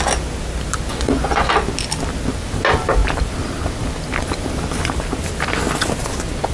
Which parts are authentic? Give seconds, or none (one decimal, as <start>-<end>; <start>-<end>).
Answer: 0.0-0.9; 1.5-6.5